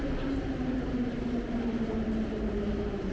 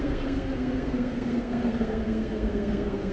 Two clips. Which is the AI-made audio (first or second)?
second